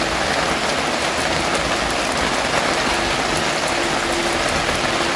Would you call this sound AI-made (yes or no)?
no